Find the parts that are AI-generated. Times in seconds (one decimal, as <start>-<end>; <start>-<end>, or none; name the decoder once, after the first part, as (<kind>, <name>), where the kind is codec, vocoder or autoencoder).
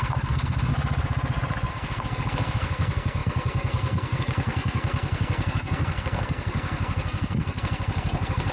0.0-0.7 (codec, SNAC); 1.7-8.5